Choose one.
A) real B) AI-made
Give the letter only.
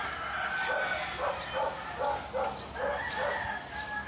A